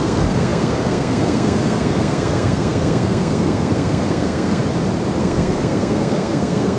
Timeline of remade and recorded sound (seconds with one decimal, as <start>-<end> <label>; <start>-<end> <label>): 0.0-4.6 remade; 4.6-5.2 recorded; 5.2-6.8 remade